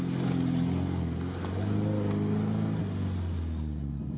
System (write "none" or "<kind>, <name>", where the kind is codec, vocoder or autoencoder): none